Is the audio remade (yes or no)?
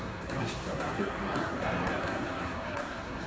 yes